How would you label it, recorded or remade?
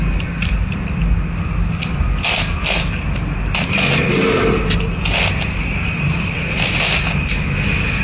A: recorded